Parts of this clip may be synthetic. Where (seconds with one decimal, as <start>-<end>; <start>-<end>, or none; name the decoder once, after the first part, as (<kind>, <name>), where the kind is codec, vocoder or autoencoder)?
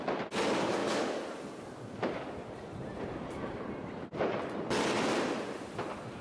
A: none